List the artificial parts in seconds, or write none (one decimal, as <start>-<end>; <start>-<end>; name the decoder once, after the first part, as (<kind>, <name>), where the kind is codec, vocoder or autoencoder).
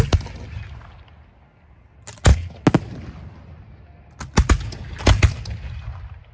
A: none